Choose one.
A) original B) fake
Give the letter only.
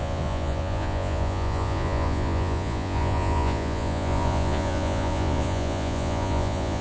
B